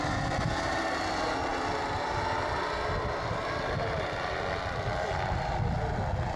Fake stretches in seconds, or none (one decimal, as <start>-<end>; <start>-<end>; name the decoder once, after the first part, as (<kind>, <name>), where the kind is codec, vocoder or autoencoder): none